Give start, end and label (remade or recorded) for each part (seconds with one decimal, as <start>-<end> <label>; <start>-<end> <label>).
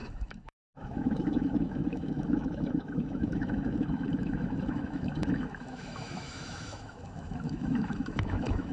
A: 0.0-8.7 remade